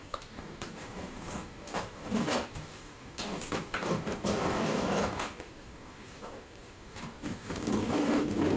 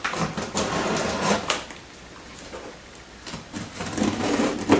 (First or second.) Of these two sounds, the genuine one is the second